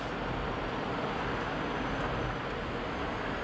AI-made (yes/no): no